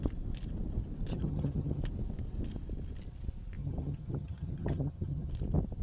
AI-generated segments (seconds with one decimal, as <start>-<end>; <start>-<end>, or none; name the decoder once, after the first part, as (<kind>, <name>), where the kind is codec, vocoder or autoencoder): 1.1-1.8 (vocoder, HiFi-GAN); 3.6-5.3